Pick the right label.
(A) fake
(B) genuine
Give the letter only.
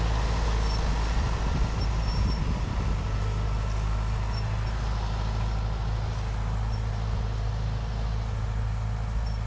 B